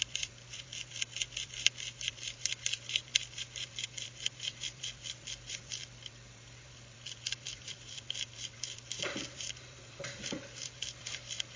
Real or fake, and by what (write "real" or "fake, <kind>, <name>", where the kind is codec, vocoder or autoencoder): fake, vocoder, BigVGAN v2